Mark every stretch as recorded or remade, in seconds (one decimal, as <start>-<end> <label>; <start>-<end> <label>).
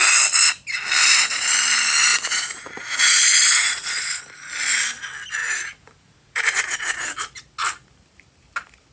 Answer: 0.0-1.0 recorded; 1.0-1.5 remade; 1.5-2.1 recorded; 2.1-4.2 remade; 4.2-5.4 recorded; 5.4-7.2 remade; 7.2-8.9 recorded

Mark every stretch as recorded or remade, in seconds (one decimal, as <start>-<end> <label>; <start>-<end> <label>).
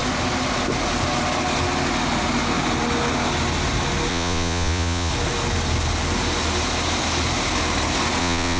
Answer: 0.0-4.1 recorded; 4.1-5.1 remade; 5.1-8.2 recorded; 8.2-8.6 remade